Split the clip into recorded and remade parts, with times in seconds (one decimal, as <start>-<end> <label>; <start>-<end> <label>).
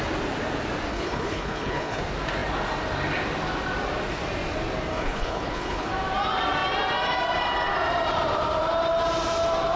0.0-0.9 recorded; 0.9-2.0 remade; 2.0-4.9 recorded; 4.9-5.9 remade; 5.9-9.8 recorded